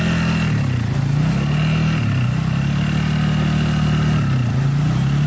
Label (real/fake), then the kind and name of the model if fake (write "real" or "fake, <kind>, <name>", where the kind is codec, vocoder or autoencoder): real